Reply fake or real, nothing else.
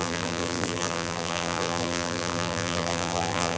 fake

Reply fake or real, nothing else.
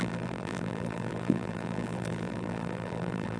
fake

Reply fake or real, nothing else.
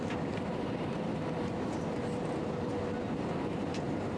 real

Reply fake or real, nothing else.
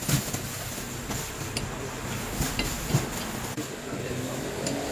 real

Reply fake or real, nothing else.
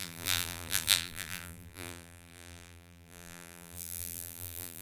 fake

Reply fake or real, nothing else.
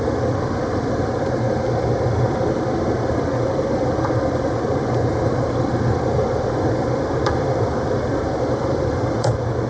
fake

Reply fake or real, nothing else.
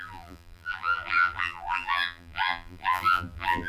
fake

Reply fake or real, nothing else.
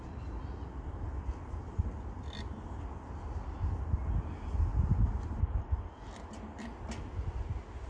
real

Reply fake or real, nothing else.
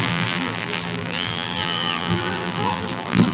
fake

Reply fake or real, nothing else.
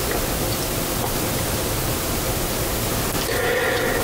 real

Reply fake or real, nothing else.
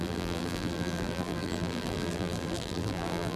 fake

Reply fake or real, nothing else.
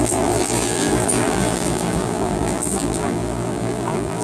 fake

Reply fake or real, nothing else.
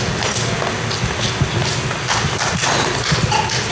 real